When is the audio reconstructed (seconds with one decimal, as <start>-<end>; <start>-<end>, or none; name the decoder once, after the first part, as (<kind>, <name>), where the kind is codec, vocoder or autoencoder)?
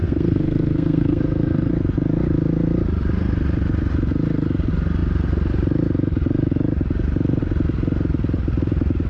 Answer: 0.0-1.7 (codec, SNAC)